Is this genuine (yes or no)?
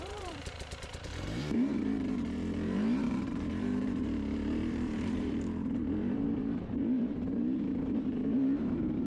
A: no